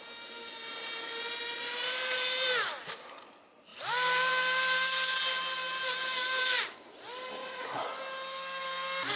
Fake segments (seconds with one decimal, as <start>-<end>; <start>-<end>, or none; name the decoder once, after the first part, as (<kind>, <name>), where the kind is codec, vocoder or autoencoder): 7.4-7.9 (vocoder, Vocos)